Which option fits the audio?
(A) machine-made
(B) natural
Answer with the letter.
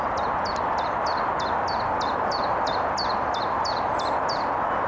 B